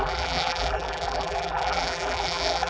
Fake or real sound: fake